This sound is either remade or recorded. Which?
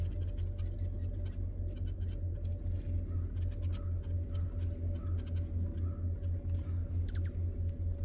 recorded